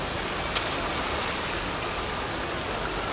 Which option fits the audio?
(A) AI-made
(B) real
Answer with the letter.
B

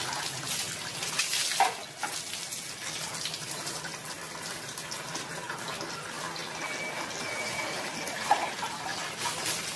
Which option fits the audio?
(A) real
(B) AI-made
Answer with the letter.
A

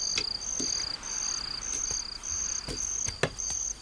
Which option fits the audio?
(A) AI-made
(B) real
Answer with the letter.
B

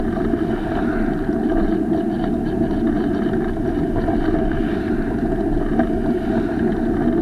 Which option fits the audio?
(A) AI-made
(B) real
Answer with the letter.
B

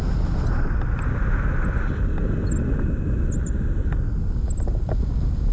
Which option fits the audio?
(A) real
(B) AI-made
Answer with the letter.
A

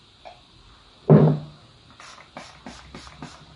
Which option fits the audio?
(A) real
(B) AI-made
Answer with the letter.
A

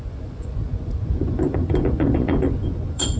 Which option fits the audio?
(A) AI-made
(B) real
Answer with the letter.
A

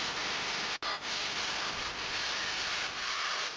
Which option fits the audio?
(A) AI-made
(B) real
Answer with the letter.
B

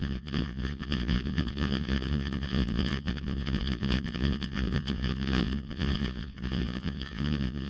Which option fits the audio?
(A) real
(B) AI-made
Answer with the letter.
B